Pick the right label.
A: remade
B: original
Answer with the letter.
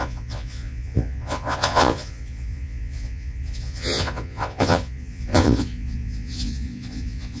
A